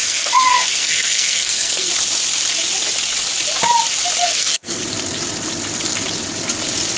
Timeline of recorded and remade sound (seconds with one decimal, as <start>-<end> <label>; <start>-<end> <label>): 0.0-1.9 remade; 1.9-4.2 recorded; 4.2-4.8 remade; 4.8-7.0 recorded